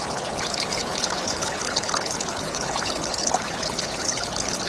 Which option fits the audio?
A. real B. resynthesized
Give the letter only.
B